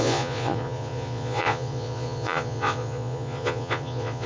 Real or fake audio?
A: fake